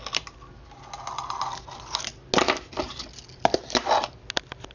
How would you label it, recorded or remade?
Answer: recorded